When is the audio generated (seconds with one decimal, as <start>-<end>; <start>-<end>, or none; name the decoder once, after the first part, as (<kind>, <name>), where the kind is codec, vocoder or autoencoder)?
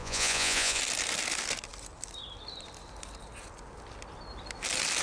0.0-0.8 (vocoder, Vocos)